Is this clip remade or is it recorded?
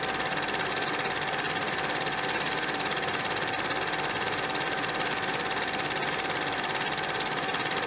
recorded